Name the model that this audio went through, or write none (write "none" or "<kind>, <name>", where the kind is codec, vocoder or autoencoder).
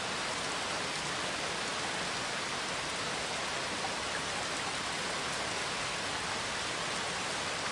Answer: none